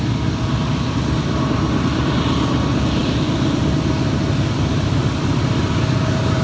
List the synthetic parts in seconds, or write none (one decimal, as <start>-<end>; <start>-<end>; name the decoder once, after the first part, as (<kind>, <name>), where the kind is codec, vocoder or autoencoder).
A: none